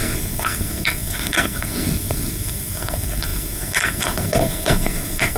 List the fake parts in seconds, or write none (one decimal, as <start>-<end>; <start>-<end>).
0.0-5.4